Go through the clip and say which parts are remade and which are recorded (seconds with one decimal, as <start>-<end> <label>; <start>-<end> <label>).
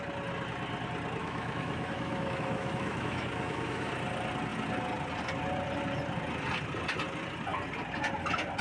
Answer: 0.0-1.2 recorded; 1.2-3.9 remade; 3.9-8.6 recorded